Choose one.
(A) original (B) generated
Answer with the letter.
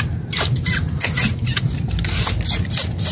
A